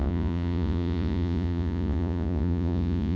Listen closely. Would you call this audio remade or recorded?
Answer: remade